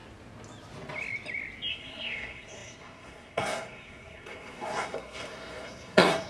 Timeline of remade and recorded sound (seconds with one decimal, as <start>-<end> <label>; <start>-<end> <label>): 0.0-1.7 recorded; 1.7-6.3 remade